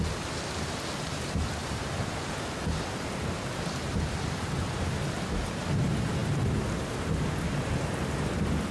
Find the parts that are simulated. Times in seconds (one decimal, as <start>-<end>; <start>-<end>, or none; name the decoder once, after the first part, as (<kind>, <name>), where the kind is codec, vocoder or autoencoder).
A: none